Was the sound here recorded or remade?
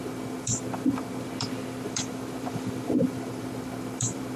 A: remade